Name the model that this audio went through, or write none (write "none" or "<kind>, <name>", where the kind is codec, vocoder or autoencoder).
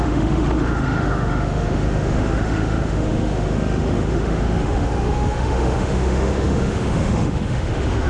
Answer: autoencoder, DAC-VAE